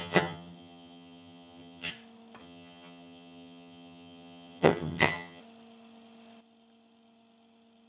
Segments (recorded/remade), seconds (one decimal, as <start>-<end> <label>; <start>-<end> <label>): 0.0-1.9 remade; 1.9-2.4 recorded; 2.4-5.4 remade; 5.4-7.9 recorded